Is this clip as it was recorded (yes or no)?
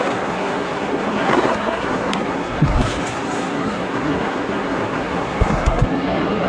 no